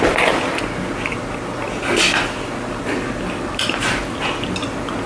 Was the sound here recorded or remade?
recorded